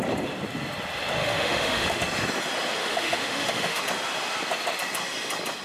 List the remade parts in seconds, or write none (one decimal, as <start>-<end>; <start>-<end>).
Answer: 1.2-2.0; 2.8-3.8